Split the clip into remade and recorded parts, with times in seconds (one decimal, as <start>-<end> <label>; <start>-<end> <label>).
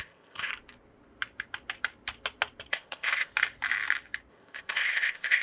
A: 0.0-0.5 remade; 0.5-2.7 recorded; 2.7-3.3 remade; 3.3-4.3 recorded; 4.3-5.4 remade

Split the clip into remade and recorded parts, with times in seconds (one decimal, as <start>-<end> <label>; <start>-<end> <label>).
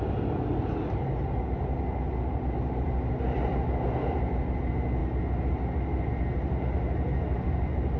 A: 0.0-8.0 recorded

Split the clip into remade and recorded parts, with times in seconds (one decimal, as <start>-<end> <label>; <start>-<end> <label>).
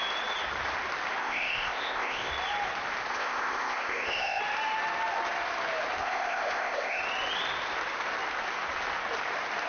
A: 0.0-1.2 recorded; 1.2-2.3 remade; 2.3-3.1 recorded; 3.1-4.4 remade; 4.4-6.0 recorded; 6.0-7.0 remade; 7.0-9.7 recorded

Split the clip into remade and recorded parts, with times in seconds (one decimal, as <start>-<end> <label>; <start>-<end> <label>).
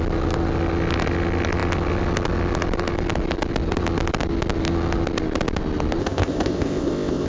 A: 0.0-6.0 recorded; 6.0-7.3 remade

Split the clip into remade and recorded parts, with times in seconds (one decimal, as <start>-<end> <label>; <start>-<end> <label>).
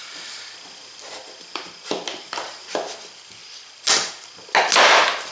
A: 0.0-5.3 recorded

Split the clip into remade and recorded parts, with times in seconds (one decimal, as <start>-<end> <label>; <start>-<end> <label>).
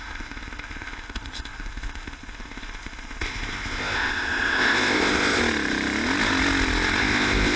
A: 0.0-5.4 remade; 5.4-7.0 recorded; 7.0-7.6 remade